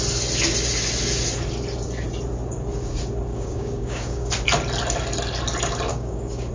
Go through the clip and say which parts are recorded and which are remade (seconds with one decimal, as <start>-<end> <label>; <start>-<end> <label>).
0.0-3.3 recorded; 3.3-4.3 remade; 4.3-5.9 recorded; 5.9-6.5 remade